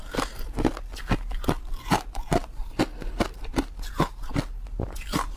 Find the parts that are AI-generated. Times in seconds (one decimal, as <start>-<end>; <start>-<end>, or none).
none